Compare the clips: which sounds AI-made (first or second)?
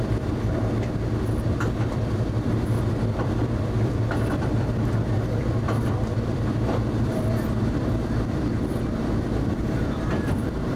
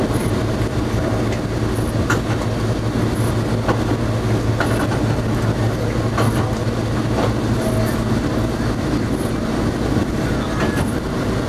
first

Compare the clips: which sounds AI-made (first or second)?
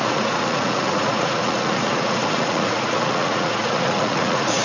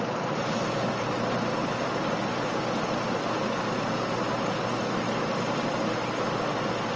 first